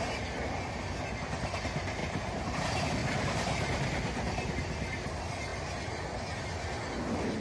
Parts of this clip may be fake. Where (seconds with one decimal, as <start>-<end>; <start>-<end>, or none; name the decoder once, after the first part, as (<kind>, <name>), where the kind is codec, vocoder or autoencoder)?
2.0-2.6 (vocoder, BigVGAN v2); 3.0-4.5